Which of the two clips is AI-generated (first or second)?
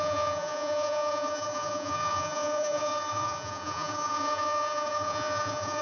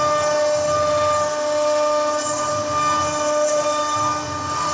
first